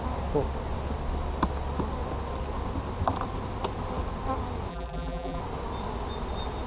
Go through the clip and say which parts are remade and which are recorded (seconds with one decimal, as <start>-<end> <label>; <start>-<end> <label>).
0.0-4.7 recorded; 4.7-5.4 remade; 5.4-6.7 recorded